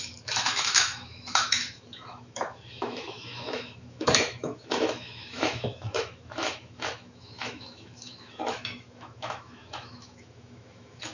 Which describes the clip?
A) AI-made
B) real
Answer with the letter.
A